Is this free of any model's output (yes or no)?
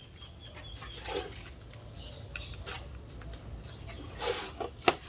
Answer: yes